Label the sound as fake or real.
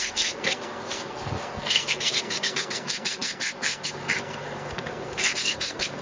fake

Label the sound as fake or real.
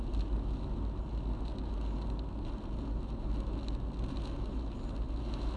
real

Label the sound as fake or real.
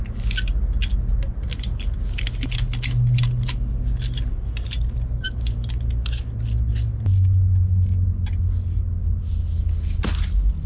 real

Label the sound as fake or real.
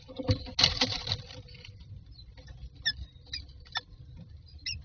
real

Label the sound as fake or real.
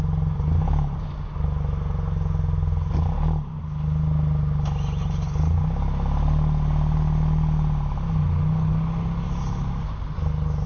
real